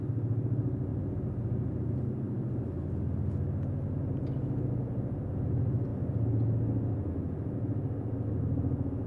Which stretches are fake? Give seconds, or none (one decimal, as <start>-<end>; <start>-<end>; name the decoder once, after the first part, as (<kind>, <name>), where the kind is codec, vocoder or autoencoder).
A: none